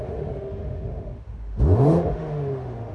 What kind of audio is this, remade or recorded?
remade